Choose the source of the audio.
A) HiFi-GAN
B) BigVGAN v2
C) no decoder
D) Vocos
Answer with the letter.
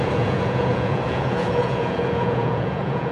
D